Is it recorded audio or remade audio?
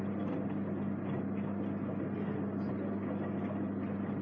recorded